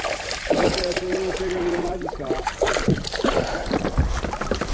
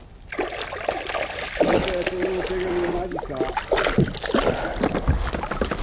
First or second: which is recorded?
second